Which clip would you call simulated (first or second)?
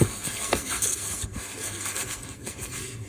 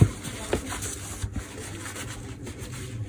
first